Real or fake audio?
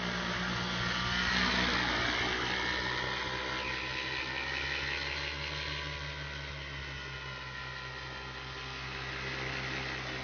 real